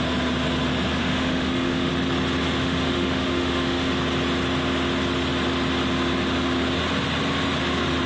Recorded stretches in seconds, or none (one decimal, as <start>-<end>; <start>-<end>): 0.0-1.0; 1.9-2.6; 3.9-8.1